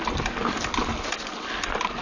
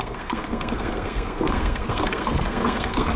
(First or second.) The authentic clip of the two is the first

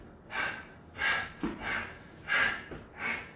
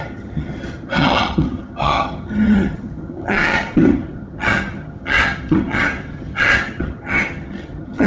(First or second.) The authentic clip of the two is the first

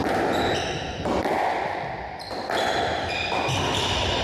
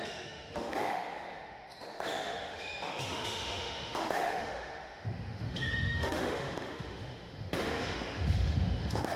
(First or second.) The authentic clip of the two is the first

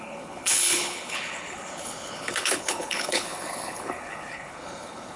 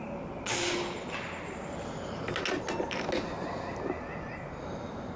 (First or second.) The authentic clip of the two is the second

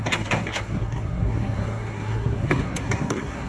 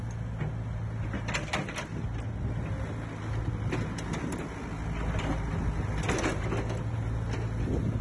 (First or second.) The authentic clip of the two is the second